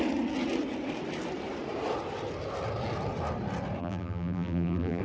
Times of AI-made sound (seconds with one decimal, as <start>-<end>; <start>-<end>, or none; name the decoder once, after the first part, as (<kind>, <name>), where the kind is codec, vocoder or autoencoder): 3.8-5.0 (vocoder, BigVGAN v2)